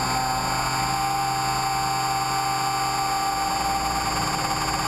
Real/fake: real